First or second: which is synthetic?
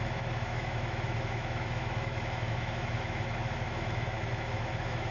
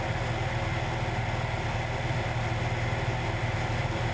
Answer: first